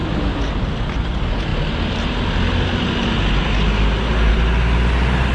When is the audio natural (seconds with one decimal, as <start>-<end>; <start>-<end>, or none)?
0.0-5.3